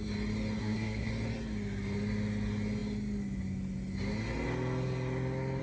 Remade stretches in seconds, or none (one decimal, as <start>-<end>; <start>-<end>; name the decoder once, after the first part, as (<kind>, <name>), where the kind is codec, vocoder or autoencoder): 0.6-1.1 (codec, SNAC)